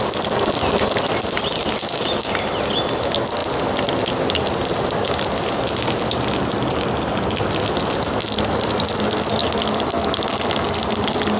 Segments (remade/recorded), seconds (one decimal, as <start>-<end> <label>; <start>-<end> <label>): 0.0-11.4 recorded